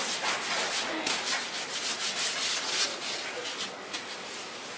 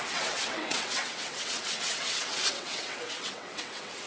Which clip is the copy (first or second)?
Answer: second